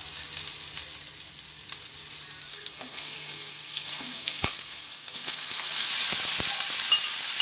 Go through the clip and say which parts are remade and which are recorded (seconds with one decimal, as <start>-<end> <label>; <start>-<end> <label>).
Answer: 0.0-2.5 recorded; 2.5-5.9 remade; 5.9-7.4 recorded